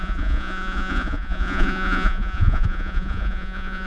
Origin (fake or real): fake